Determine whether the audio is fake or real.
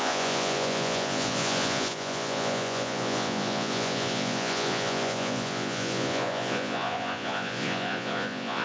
fake